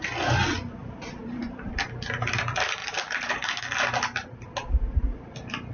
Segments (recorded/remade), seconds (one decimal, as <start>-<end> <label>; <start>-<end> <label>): 0.0-0.8 recorded; 0.8-1.7 remade; 1.7-2.8 recorded; 2.8-3.6 remade; 3.6-5.7 recorded